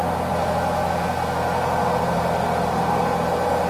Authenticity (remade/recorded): recorded